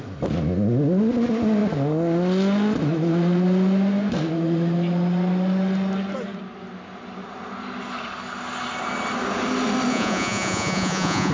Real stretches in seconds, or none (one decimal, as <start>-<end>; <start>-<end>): 0.0-9.9